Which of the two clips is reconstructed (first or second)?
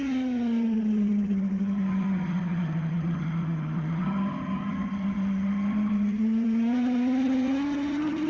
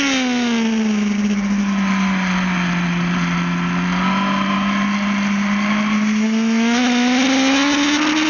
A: first